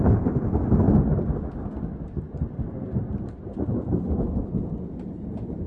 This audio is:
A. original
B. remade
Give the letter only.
A